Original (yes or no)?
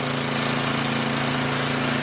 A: yes